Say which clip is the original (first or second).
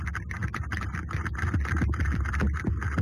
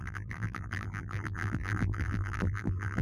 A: first